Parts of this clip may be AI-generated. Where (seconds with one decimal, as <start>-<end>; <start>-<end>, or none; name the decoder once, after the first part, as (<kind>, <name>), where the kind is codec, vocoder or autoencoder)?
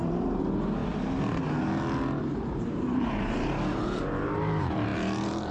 0.0-0.8 (vocoder, BigVGAN v2); 2.2-5.5